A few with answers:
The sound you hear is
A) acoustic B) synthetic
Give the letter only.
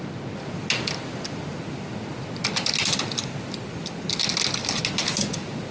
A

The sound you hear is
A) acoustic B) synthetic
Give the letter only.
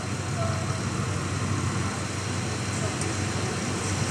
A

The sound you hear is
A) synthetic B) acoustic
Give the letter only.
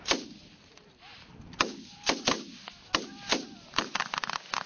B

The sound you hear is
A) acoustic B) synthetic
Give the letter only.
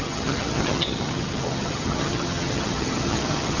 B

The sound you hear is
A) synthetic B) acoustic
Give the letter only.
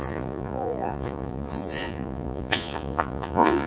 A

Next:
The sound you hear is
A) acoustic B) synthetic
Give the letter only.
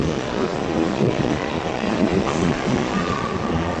B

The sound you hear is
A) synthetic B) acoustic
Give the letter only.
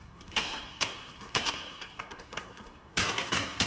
A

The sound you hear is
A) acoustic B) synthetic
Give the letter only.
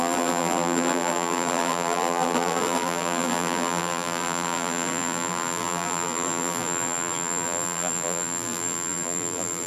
B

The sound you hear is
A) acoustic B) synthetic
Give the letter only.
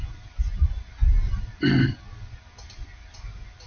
A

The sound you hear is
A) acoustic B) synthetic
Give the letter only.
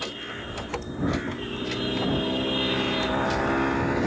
A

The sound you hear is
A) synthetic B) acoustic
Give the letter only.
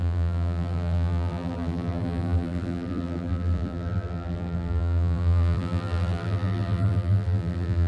A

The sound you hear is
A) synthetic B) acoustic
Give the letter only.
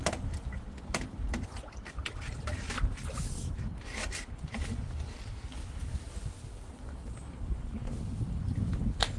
B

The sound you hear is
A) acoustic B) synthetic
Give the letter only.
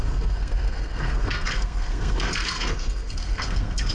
B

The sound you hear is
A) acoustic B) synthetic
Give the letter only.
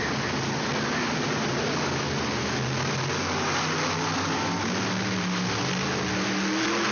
A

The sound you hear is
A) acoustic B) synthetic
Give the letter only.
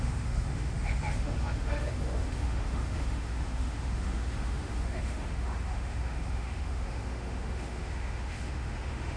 B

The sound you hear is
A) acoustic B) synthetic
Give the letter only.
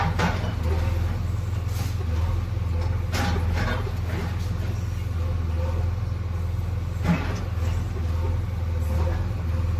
A